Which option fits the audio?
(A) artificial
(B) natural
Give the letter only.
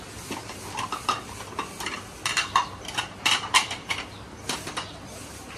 B